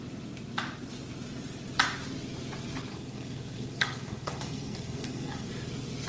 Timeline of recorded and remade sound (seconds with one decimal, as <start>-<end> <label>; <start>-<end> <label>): 0.0-2.9 recorded; 2.9-5.5 remade; 5.5-6.1 recorded